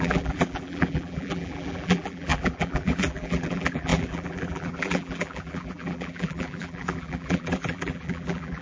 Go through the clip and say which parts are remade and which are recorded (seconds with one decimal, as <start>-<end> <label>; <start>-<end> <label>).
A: 0.0-8.6 remade